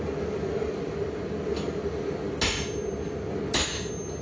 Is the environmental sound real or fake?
real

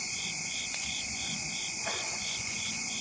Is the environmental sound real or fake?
fake